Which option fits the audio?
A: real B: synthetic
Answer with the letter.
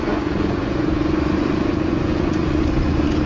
B